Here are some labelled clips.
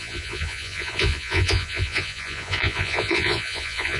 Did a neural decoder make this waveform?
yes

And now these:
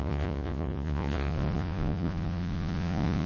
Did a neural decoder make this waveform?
yes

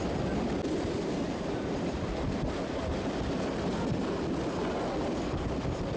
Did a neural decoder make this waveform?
no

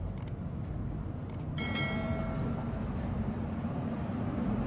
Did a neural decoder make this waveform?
no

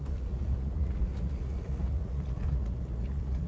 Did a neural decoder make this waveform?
yes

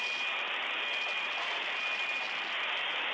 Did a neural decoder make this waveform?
no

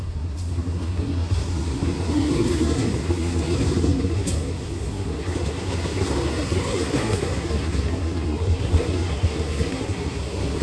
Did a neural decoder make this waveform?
yes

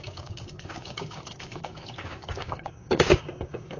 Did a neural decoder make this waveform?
yes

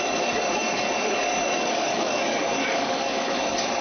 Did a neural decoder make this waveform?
yes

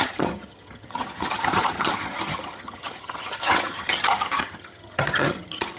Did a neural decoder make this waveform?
yes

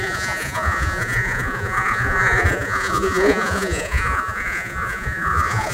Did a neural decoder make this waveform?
yes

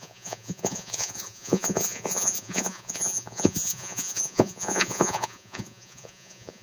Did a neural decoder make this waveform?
yes